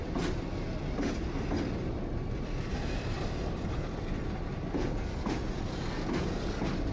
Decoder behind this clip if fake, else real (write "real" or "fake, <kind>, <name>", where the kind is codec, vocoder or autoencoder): real